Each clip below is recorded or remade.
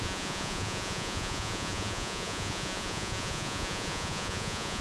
remade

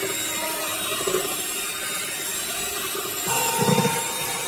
recorded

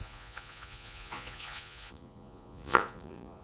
remade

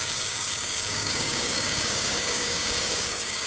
remade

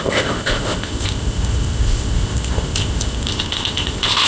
remade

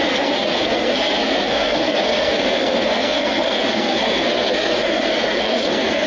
remade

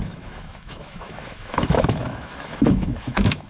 remade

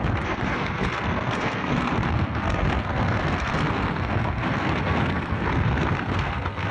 remade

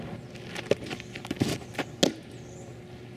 recorded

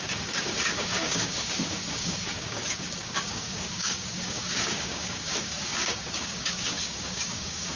remade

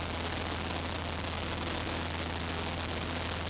recorded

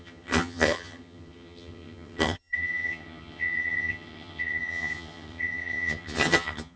remade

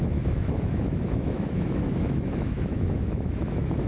remade